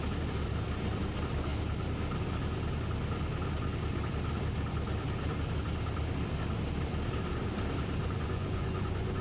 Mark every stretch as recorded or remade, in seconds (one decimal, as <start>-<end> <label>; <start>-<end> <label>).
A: 0.0-8.0 recorded; 8.0-9.2 remade